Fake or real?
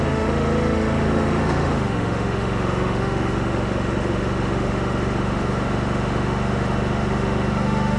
fake